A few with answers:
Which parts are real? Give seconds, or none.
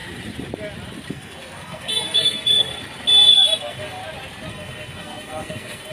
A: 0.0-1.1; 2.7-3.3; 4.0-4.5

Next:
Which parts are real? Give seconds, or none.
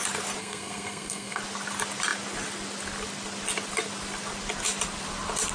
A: 0.0-0.4; 1.4-5.5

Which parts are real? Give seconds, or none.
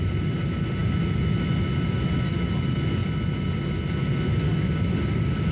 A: 0.0-5.5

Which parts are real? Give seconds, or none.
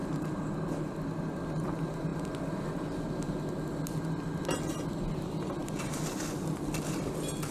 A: 0.0-7.5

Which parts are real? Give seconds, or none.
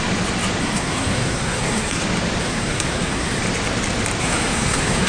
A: 0.0-0.6; 2.0-2.4; 3.4-4.2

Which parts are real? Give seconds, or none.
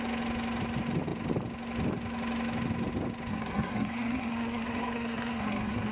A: 0.0-3.3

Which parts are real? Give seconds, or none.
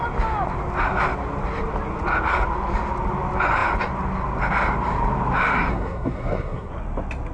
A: 0.0-5.7; 6.7-7.3